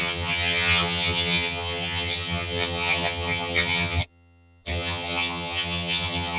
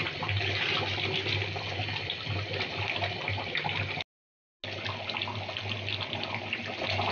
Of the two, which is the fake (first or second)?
first